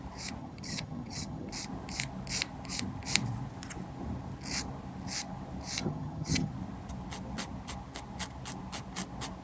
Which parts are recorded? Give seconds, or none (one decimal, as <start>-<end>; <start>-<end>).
0.0-0.4; 1.5-5.8; 6.5-9.4